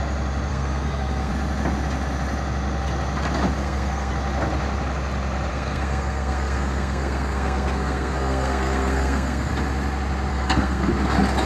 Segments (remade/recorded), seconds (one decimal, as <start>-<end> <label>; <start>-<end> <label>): 0.0-0.5 recorded; 0.5-1.3 remade; 1.3-3.6 recorded; 3.6-4.1 remade; 4.1-5.5 recorded; 5.5-9.5 remade; 9.5-10.3 recorded; 10.3-10.9 remade; 10.9-11.5 recorded